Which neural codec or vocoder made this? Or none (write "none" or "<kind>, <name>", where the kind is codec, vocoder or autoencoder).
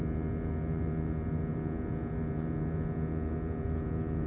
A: vocoder, Vocos